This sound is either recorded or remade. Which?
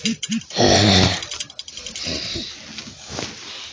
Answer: recorded